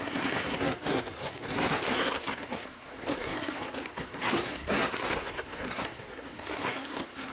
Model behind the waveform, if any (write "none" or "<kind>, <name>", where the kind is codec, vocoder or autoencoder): codec, SNAC